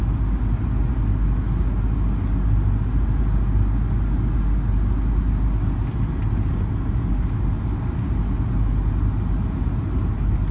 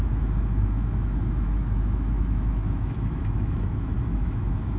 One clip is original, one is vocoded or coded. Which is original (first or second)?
first